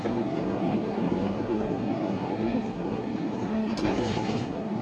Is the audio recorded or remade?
remade